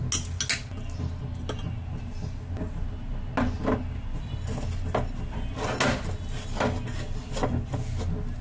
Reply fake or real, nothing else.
real